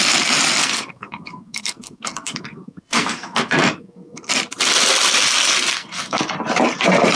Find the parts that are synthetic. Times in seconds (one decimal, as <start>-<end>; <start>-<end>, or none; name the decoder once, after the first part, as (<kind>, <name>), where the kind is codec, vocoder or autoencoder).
0.6-4.3 (codec, SNAC); 5.7-6.2